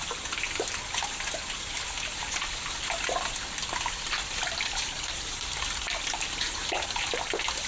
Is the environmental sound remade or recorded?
recorded